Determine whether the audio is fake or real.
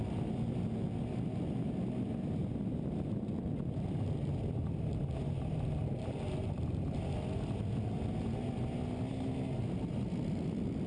real